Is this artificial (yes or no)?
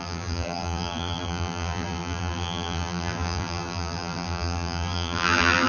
yes